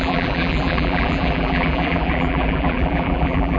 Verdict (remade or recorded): remade